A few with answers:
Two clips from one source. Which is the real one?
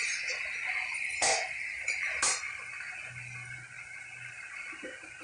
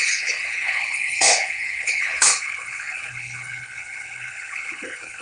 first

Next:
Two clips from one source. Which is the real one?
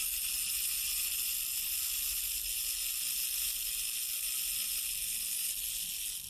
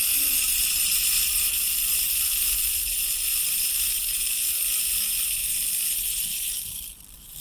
first